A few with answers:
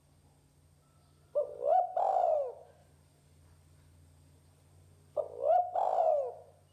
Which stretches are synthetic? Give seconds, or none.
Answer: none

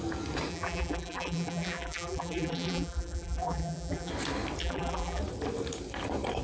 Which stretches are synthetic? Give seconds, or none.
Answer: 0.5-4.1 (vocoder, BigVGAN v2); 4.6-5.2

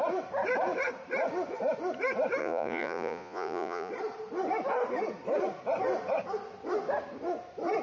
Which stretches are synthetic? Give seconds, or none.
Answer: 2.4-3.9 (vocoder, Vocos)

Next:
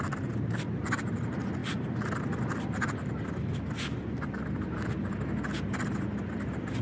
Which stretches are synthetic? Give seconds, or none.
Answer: none